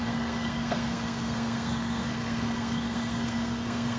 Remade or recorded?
remade